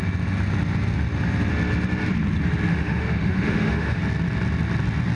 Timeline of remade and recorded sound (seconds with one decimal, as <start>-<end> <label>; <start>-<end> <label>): 0.0-2.7 recorded; 2.7-4.0 remade; 4.0-5.2 recorded